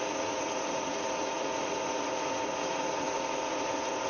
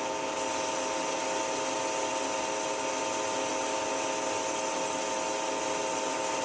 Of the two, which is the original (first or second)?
second